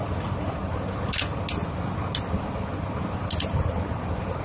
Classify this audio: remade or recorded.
recorded